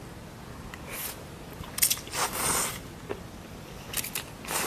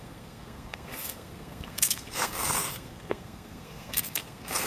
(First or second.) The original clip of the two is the first